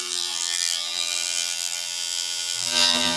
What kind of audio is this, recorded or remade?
remade